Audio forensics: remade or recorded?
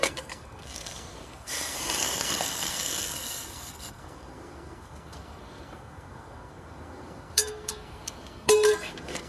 remade